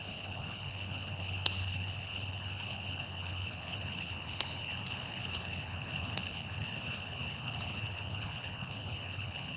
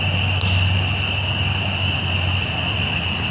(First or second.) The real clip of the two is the second